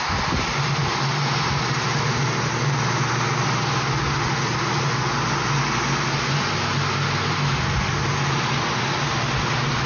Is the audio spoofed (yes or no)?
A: no